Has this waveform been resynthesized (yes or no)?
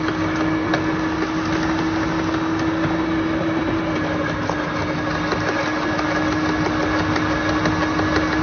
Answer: no